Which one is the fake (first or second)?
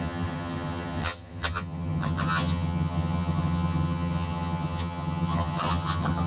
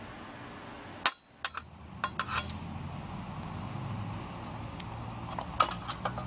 first